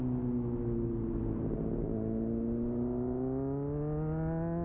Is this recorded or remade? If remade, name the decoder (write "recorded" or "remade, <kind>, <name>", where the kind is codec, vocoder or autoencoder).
recorded